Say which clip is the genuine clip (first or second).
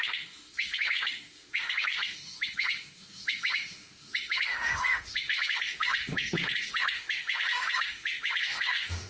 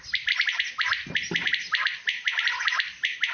second